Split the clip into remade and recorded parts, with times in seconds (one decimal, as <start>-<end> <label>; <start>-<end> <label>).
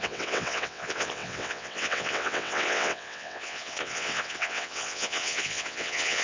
0.0-6.2 remade